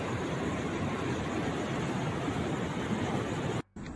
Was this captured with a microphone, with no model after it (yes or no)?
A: yes